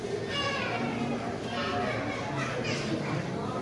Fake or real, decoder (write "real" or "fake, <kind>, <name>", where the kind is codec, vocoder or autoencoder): real